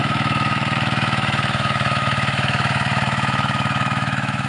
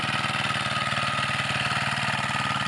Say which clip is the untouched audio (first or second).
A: second